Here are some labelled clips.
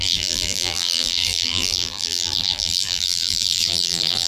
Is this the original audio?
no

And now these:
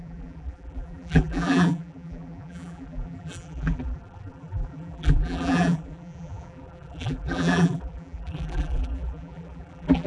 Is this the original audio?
no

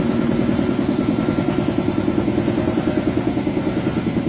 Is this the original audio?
yes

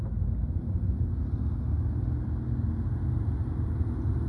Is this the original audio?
yes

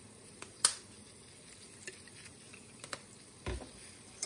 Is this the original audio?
yes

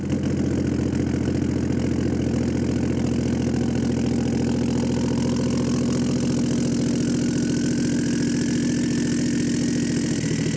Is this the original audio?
yes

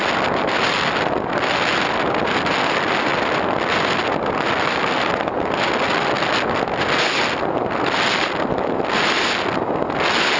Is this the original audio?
yes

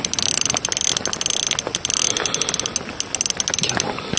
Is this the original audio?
yes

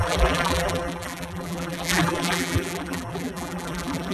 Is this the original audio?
no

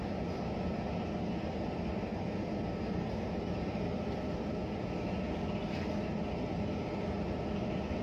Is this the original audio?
yes